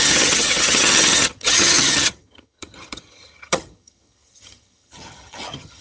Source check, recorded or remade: remade